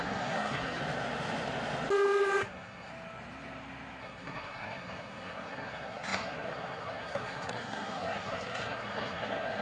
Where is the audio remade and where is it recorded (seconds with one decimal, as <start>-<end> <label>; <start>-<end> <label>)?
0.0-0.8 remade; 0.8-2.4 recorded; 2.4-2.9 remade; 2.9-4.0 recorded; 4.0-9.6 remade